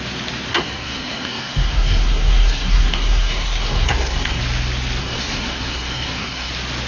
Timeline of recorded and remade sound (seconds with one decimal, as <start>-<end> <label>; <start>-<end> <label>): 0.0-0.5 recorded; 0.5-4.4 remade; 4.4-5.0 recorded; 5.0-6.5 remade; 6.5-6.9 recorded